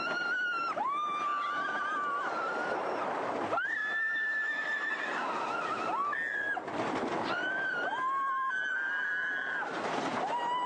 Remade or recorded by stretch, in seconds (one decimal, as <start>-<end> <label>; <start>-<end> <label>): 0.0-3.8 recorded; 3.8-4.9 remade; 4.9-10.7 recorded